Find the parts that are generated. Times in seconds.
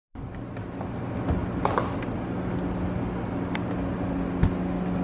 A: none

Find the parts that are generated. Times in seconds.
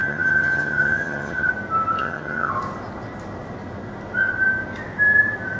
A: 0.0-1.5 (vocoder, HiFi-GAN); 2.0-2.5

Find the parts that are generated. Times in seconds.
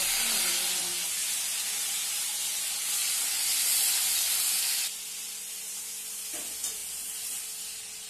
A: 3.0-5.8 (vocoder, BigVGAN v2); 6.8-7.4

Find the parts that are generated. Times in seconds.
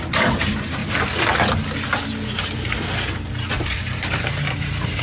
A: 0.0-0.8 (vocoder, BigVGAN v2); 3.8-5.0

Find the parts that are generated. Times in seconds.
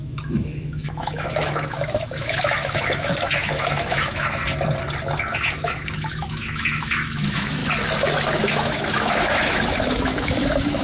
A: 0.0-4.4 (autoencoder, DAC-VAE); 5.3-7.6; 8.4-10.8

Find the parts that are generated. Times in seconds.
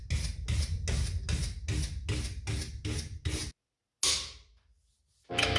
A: none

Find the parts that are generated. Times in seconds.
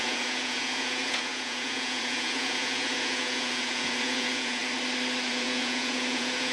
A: 0.0-4.6 (vocoder, Vocos); 5.3-6.5